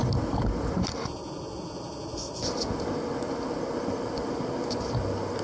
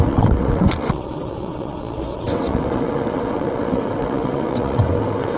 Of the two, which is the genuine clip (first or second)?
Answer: first